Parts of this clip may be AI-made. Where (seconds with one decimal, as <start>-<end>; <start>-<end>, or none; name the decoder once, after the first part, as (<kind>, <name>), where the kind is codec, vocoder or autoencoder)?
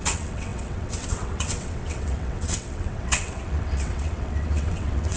0.0-5.2 (vocoder, WaveNeXt)